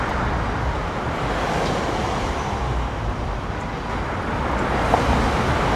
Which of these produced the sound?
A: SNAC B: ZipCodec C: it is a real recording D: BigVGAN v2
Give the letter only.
C